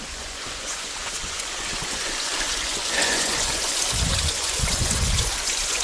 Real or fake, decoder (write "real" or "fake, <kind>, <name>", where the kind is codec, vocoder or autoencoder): fake, vocoder, Vocos